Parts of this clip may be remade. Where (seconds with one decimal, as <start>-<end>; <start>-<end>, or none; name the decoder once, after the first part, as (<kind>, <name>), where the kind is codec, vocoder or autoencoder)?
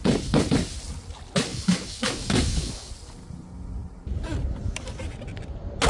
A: 1.5-2.9 (codec, DAC)